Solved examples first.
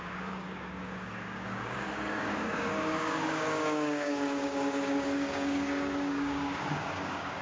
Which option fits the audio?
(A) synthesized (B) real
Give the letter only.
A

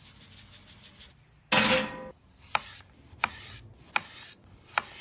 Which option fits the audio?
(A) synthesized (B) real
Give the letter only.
B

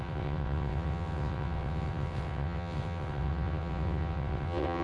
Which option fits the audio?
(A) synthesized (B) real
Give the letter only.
A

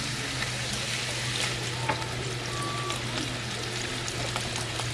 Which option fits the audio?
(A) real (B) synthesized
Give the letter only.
A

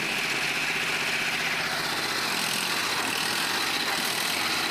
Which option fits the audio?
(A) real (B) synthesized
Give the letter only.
A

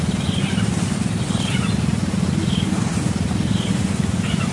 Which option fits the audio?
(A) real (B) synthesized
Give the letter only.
A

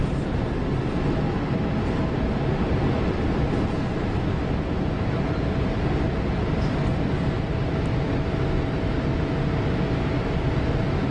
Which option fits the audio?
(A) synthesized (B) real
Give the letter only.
B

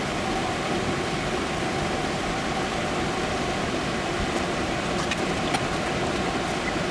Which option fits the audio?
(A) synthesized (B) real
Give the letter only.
B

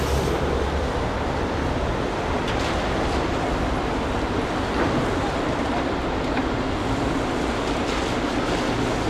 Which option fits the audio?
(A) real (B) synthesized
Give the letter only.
A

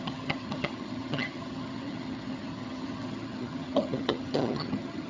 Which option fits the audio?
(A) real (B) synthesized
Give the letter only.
B